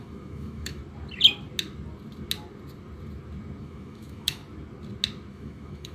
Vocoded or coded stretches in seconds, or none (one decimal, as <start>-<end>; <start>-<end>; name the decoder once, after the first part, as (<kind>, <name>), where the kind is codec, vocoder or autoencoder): 0.0-0.8 (autoencoder, DAC-VAE); 3.6-4.4; 5.3-5.9